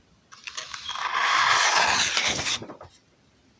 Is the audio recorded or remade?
recorded